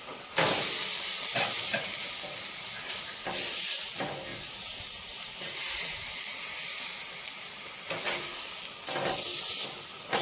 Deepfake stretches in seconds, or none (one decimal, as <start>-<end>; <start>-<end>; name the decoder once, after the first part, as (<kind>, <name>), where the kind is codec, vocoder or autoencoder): none

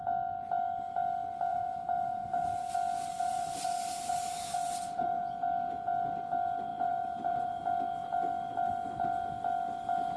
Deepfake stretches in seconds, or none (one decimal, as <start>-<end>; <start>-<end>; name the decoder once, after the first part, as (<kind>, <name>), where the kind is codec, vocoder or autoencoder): 1.5-2.7 (vocoder, BigVGAN v2); 3.1-5.2; 6.7-7.6

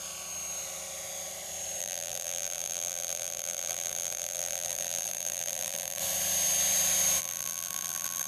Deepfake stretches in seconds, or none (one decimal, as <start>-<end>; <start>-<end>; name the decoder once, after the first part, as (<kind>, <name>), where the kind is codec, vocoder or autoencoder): 1.8-6.0 (vocoder, BigVGAN v2); 7.2-8.3

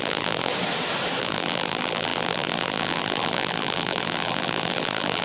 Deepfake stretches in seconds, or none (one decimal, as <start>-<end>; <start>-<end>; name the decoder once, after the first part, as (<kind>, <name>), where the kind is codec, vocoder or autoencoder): 0.0-0.5 (vocoder, BigVGAN v2); 1.2-5.2

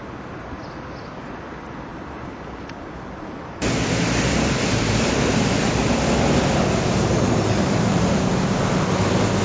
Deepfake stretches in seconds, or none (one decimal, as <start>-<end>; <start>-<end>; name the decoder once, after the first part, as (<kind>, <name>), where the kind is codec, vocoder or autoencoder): 1.9-3.7 (vocoder, BigVGAN v2); 5.3-5.8; 7.1-8.3

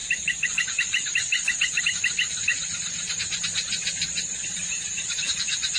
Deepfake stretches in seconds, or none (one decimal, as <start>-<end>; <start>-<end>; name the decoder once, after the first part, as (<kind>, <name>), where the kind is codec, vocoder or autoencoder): 0.0-1.8 (vocoder, BigVGAN v2); 2.5-3.4; 4.6-5.1

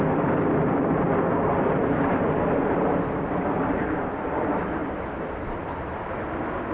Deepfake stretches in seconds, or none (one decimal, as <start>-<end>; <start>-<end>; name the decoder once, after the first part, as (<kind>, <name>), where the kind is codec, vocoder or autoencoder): 0.0-4.8 (vocoder, BigVGAN v2); 5.4-6.7

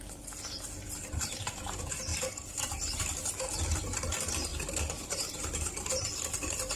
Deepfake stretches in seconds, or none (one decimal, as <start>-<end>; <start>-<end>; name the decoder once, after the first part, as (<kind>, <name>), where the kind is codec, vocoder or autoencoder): 2.1-4.0 (vocoder, BigVGAN v2); 4.5-5.8